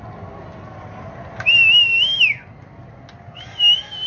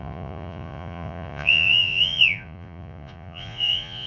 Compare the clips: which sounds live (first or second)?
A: first